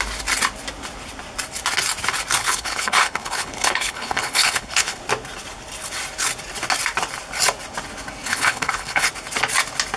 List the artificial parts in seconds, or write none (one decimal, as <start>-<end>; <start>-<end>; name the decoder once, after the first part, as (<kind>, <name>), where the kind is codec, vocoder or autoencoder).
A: 2.4-5.0 (codec, HILCodec); 8.3-9.1